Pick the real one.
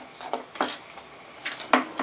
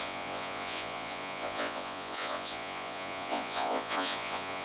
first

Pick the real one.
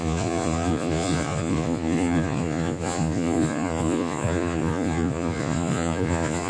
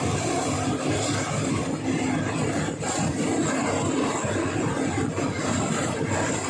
second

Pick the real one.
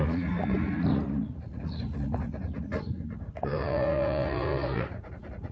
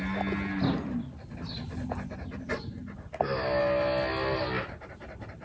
second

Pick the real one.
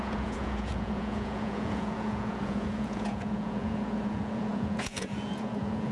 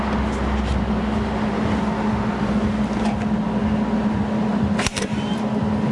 second